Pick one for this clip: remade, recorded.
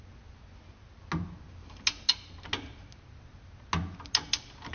recorded